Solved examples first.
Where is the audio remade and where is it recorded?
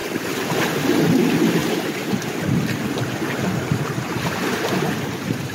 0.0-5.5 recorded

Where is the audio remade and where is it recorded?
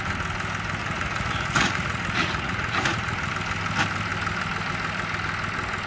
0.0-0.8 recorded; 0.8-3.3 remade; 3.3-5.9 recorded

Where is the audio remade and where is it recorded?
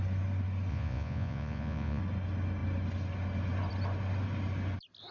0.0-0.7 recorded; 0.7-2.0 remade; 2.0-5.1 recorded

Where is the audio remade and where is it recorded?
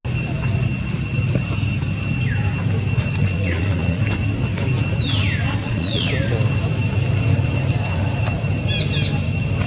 0.0-3.2 recorded; 3.2-4.0 remade; 4.0-5.6 recorded; 5.6-6.1 remade; 6.1-9.7 recorded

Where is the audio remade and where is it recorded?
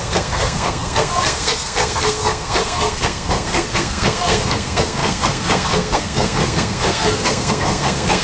0.0-8.2 remade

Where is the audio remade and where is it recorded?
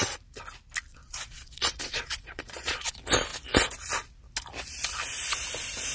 0.0-0.9 recorded; 0.9-2.9 remade; 2.9-5.9 recorded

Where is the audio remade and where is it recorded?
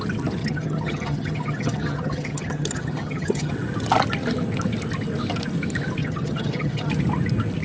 0.0-0.4 recorded; 0.4-3.5 remade; 3.5-6.0 recorded; 6.0-6.9 remade; 6.9-7.6 recorded